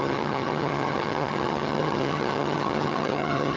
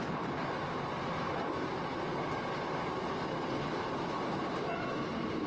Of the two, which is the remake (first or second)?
first